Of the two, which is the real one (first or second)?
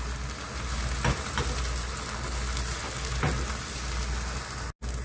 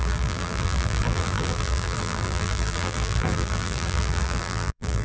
first